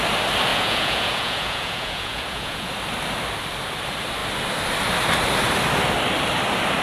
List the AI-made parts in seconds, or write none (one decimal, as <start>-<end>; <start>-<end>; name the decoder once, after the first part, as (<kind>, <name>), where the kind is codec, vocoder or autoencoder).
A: 0.5-2.7 (vocoder, Vocos)